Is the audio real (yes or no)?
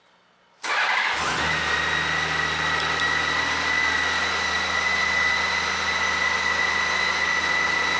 yes